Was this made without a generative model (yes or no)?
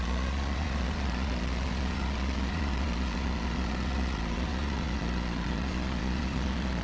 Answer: no